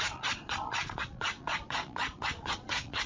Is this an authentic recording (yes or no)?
no